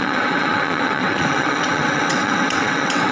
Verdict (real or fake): fake